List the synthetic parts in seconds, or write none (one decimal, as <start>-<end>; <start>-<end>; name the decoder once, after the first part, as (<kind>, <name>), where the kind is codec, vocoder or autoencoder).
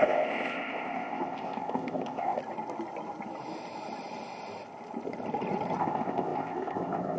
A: 0.0-2.4 (codec, ZipCodec); 5.8-7.2